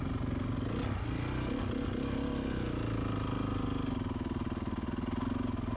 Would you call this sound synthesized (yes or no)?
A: no